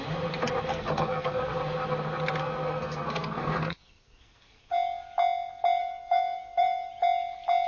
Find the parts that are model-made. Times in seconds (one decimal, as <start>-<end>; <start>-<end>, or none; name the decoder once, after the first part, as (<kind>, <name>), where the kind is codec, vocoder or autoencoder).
0.7-1.5 (codec, SNAC); 2.4-4.7; 5.8-6.9